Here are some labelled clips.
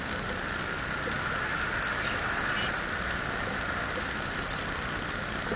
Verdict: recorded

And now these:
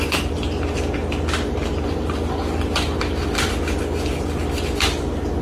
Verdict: recorded